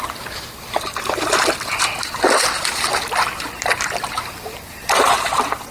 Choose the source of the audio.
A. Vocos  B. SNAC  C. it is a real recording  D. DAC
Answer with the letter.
C